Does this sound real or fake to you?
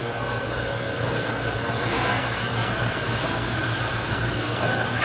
fake